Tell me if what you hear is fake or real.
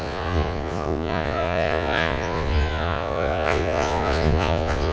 fake